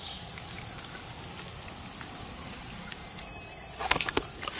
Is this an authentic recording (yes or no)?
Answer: yes